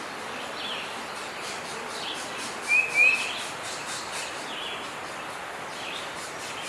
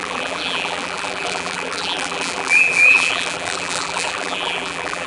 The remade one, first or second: second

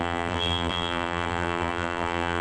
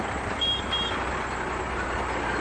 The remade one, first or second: first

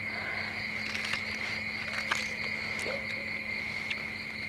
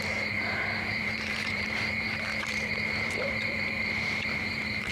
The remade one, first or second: second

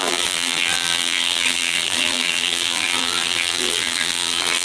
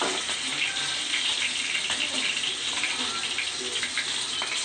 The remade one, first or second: first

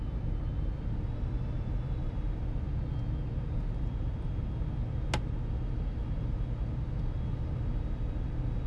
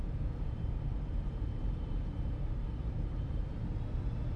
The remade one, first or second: second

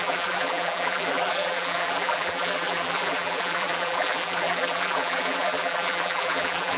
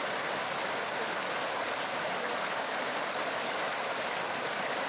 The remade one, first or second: first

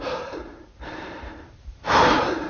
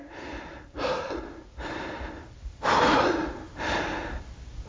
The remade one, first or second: first